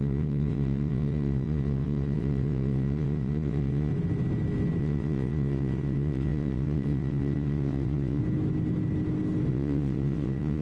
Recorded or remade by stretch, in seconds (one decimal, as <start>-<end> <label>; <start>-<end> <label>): 0.0-3.9 remade; 3.9-4.8 recorded; 4.8-8.2 remade; 8.2-9.5 recorded; 9.5-10.6 remade